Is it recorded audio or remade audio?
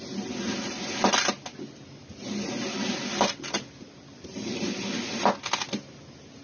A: recorded